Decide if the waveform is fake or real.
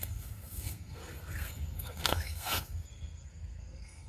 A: fake